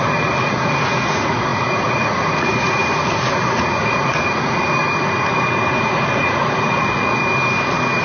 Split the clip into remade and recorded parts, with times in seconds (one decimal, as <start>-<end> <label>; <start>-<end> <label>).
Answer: 0.0-4.8 remade; 4.8-5.7 recorded; 5.7-7.2 remade; 7.2-8.0 recorded